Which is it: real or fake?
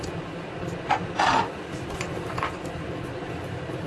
fake